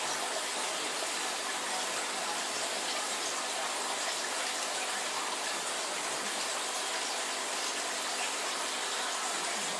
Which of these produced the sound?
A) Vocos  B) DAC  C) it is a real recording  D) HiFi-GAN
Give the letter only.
C